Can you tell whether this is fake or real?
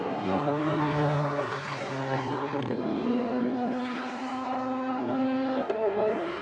fake